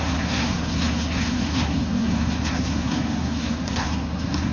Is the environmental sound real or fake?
fake